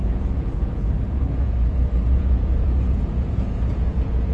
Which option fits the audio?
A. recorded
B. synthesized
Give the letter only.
B